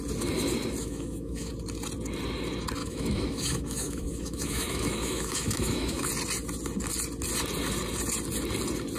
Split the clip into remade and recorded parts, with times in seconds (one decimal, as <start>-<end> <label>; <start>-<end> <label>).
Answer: 0.0-0.8 recorded; 0.8-1.5 remade; 1.5-2.8 recorded; 2.8-6.1 remade; 6.1-9.0 recorded